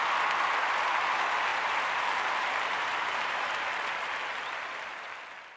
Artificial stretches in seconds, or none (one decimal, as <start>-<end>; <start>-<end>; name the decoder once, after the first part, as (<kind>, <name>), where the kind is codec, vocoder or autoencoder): 1.5-3.7 (vocoder, BigVGAN v2)